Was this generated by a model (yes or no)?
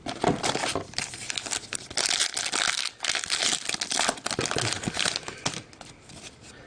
no